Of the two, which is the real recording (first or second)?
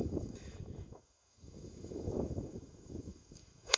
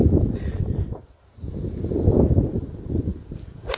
second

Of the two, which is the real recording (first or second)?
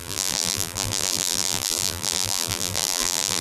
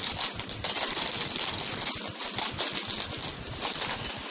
second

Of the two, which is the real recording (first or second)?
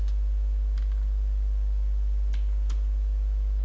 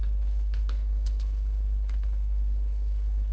first